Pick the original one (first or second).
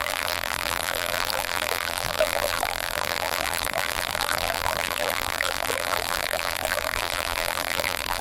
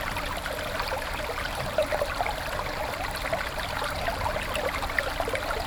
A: second